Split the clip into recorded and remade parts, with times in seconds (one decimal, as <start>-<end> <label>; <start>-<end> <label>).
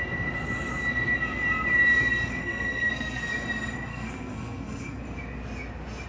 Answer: 0.0-2.4 recorded; 2.4-3.3 remade; 3.3-3.9 recorded; 3.9-5.0 remade; 5.0-6.1 recorded